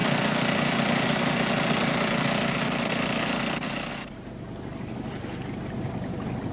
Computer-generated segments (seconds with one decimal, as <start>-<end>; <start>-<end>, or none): none